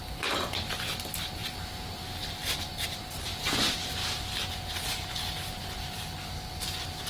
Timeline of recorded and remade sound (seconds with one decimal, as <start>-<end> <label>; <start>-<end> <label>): 0.0-7.1 recorded